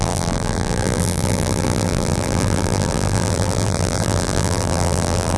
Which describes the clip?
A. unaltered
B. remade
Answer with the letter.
B